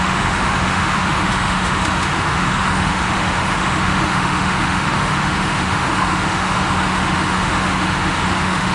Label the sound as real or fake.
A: fake